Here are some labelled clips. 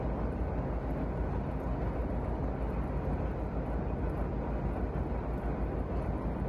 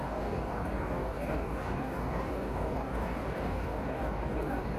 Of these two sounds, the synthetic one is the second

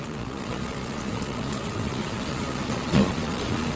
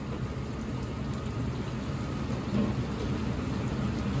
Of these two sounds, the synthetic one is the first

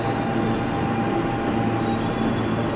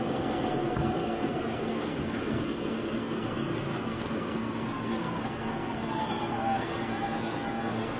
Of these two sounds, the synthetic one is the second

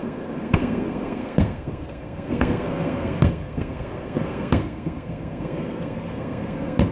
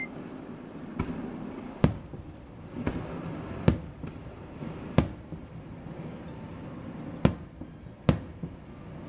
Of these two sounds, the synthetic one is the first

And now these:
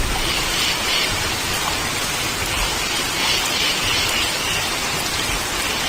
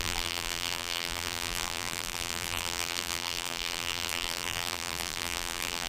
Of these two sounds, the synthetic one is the second